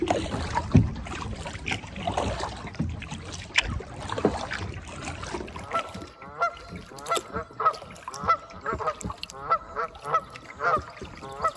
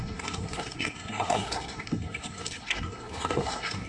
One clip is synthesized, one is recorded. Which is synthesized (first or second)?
second